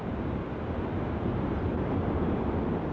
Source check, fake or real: fake